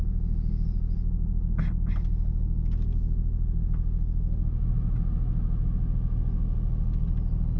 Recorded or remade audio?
recorded